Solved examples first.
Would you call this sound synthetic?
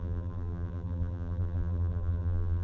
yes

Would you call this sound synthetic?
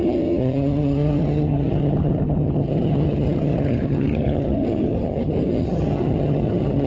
yes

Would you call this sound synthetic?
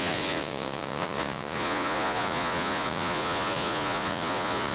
yes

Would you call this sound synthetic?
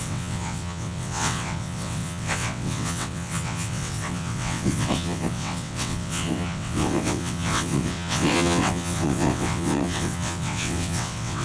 yes